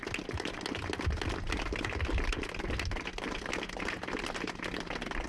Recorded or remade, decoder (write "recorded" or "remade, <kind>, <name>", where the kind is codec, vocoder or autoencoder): recorded